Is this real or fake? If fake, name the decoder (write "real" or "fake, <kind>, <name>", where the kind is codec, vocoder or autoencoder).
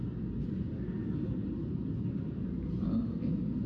real